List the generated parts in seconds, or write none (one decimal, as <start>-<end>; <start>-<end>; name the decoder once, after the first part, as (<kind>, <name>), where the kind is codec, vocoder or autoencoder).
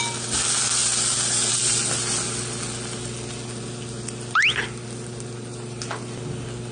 none